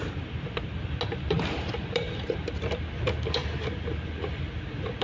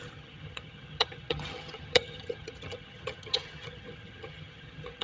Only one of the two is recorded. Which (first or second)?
first